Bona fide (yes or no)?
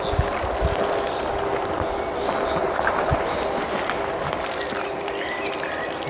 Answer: yes